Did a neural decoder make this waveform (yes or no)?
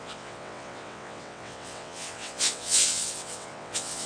yes